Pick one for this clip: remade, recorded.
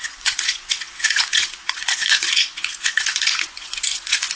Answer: remade